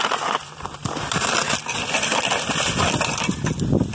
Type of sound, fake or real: real